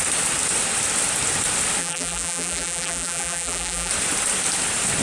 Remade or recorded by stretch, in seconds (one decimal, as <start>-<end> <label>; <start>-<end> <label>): 0.0-1.8 recorded; 1.8-3.9 remade; 3.9-5.0 recorded